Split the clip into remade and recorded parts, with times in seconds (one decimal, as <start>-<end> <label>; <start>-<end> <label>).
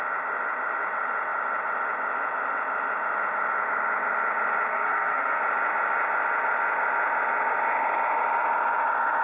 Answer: 0.0-4.7 recorded; 4.7-5.4 remade; 5.4-9.2 recorded